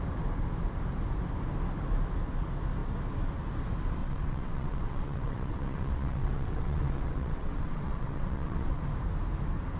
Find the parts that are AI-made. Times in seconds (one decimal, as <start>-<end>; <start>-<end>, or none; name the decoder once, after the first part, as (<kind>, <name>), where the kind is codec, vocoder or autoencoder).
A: 4.0-8.8 (vocoder, WaveNeXt)